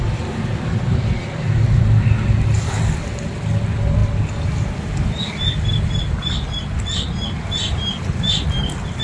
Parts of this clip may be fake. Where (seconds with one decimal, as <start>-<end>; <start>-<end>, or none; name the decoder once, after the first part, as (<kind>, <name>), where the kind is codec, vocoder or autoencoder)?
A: none